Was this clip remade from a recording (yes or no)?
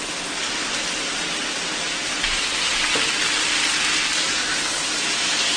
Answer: no